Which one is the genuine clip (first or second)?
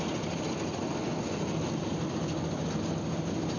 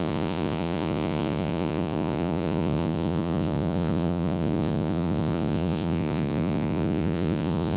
first